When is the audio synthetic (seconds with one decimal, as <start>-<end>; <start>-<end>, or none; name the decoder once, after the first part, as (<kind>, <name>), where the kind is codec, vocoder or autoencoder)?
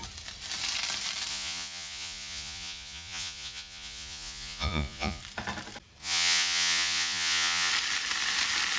1.3-5.2 (vocoder, Vocos); 6.0-7.7